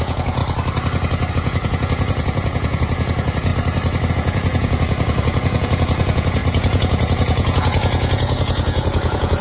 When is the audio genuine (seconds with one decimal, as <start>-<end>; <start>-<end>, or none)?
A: 0.4-1.3; 3.5-4.1